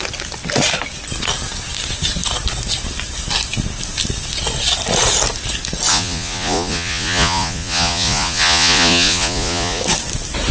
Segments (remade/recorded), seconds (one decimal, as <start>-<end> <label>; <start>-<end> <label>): 0.0-5.9 recorded; 5.9-9.8 remade; 9.8-10.5 recorded